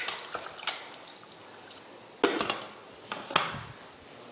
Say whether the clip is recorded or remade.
recorded